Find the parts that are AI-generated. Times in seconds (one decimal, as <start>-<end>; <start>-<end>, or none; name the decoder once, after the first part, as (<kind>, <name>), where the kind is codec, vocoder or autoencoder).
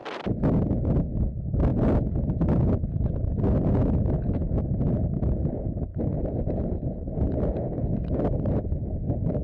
none